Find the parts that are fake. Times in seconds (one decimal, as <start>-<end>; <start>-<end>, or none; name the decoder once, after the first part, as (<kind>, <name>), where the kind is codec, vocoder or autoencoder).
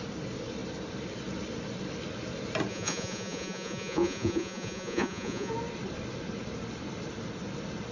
2.7-5.5 (vocoder, Vocos)